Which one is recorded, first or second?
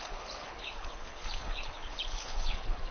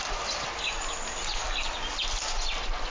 second